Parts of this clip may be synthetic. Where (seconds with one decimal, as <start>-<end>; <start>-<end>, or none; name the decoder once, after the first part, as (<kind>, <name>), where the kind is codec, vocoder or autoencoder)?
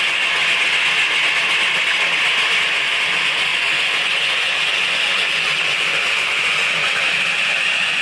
0.0-0.4 (vocoder, Vocos); 2.6-8.0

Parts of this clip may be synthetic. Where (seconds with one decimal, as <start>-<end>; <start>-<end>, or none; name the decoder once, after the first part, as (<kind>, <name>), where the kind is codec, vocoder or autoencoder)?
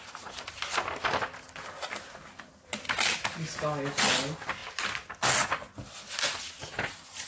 none